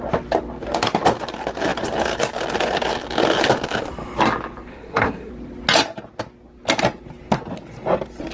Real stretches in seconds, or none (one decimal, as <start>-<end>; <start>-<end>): 0.0-4.7; 5.3-8.3